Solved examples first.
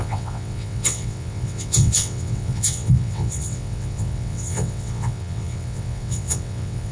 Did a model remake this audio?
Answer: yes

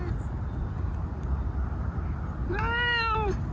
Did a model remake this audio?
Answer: no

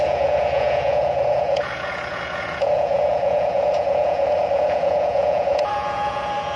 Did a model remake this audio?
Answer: yes